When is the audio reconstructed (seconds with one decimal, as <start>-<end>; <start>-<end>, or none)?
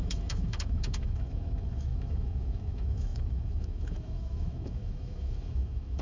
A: 0.0-6.0